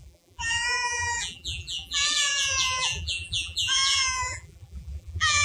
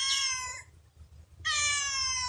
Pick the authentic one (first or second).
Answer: second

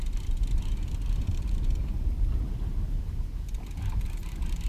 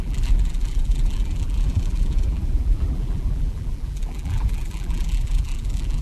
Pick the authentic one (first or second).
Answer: first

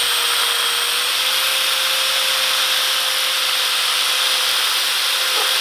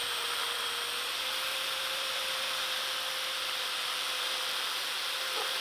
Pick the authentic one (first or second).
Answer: first